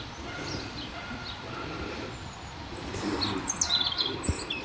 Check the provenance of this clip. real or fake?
real